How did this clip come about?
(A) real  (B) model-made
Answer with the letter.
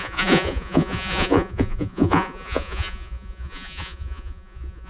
B